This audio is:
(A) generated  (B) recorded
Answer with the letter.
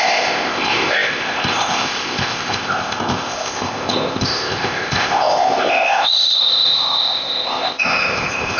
A